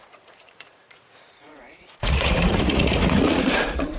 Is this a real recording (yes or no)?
no